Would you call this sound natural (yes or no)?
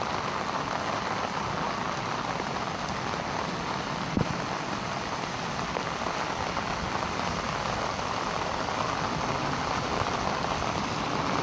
yes